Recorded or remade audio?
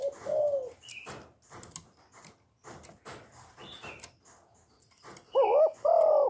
recorded